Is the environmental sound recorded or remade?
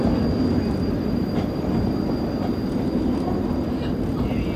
recorded